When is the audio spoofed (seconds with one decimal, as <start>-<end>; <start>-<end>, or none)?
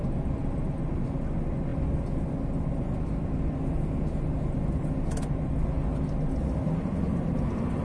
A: none